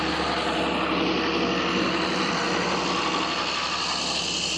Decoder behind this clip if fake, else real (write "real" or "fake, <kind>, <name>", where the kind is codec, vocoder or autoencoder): real